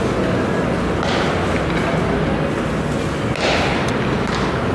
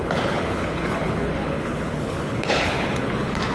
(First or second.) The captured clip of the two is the first